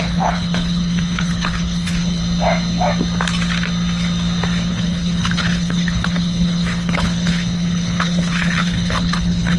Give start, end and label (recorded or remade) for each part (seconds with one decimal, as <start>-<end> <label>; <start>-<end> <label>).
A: 0.0-2.2 remade; 2.2-4.7 recorded; 4.7-9.6 remade

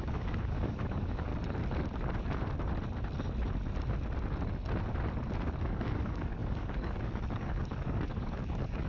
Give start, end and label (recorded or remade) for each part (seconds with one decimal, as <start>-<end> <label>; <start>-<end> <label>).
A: 0.0-1.3 remade; 1.3-5.6 recorded; 5.6-8.9 remade

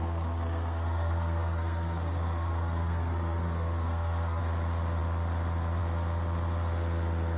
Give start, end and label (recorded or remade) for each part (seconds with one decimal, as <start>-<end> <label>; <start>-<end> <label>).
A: 0.0-4.4 remade; 4.4-7.4 recorded

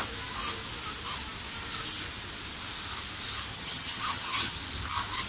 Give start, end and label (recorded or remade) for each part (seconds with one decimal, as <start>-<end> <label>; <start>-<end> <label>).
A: 0.0-3.5 recorded; 3.5-4.6 remade; 4.6-5.3 recorded

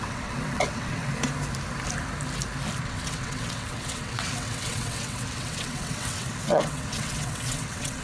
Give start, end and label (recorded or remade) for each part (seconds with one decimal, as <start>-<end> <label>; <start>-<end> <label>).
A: 0.0-1.1 remade; 1.1-2.8 recorded; 2.8-8.0 remade